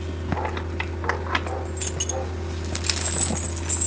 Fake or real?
real